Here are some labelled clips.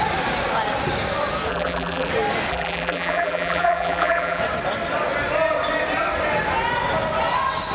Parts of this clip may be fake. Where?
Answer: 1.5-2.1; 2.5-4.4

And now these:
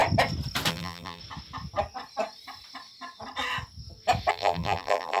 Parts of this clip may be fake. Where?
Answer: 0.7-1.2; 4.3-5.2

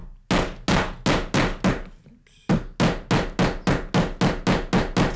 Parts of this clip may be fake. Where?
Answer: none

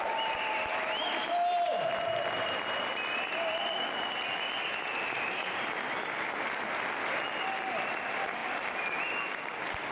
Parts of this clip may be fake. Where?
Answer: none